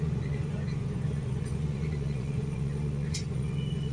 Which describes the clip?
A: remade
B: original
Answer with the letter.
A